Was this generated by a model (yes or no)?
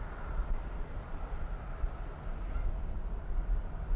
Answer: no